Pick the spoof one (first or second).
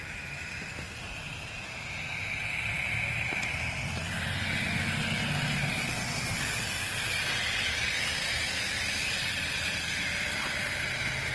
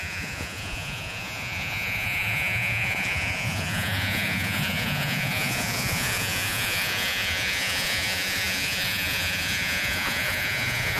second